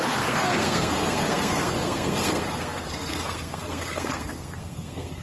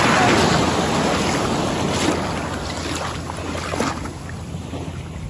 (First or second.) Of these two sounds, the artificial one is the first